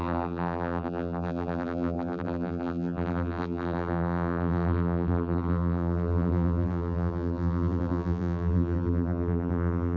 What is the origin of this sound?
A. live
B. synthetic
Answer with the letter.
B